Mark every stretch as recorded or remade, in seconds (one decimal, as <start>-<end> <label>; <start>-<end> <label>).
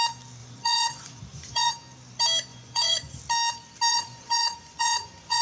0.0-0.4 recorded; 0.4-1.7 remade; 1.7-2.5 recorded; 2.5-3.2 remade; 3.2-3.9 recorded; 3.9-5.4 remade